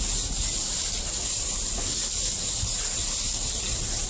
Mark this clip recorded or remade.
recorded